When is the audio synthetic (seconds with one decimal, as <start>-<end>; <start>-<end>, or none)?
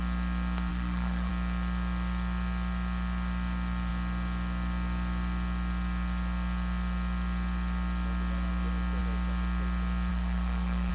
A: 0.7-1.3; 10.1-10.9